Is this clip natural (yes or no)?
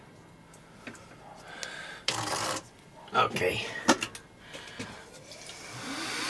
yes